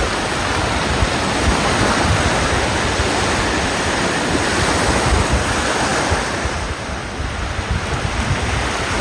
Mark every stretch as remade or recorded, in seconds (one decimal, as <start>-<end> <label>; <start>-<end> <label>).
0.0-1.1 recorded; 1.1-5.3 remade; 5.3-5.9 recorded; 5.9-7.2 remade; 7.2-9.0 recorded

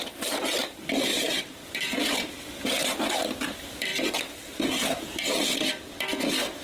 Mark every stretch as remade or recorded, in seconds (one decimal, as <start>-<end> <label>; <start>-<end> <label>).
0.0-1.1 recorded; 1.1-2.7 remade; 2.7-6.6 recorded

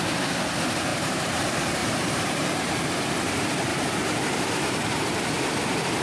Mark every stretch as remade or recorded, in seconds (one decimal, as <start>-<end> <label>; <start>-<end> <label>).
0.0-0.9 recorded; 0.9-1.4 remade; 1.4-1.8 recorded; 1.8-2.7 remade; 2.7-3.7 recorded; 3.7-5.2 remade; 5.2-6.0 recorded

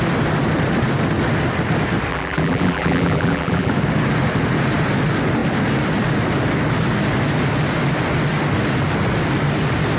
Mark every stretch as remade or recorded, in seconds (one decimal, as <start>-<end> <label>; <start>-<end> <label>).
0.0-2.1 recorded; 2.1-3.7 remade; 3.7-10.0 recorded

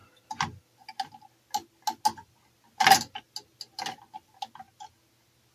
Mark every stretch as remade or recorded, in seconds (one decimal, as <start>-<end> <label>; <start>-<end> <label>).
0.0-5.5 recorded

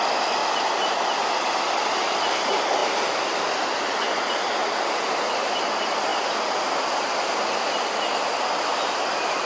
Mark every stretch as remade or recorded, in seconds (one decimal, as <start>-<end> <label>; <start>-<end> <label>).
0.0-9.5 recorded

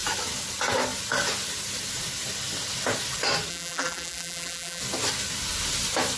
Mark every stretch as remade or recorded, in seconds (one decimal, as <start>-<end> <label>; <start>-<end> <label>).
0.0-3.5 recorded; 3.5-4.8 remade; 4.8-6.2 recorded